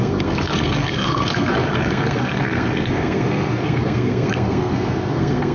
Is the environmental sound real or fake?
fake